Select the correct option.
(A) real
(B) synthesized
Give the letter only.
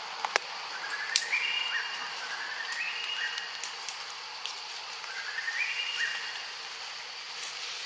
A